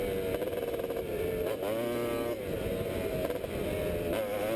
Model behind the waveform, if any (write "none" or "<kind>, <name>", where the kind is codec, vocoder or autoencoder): none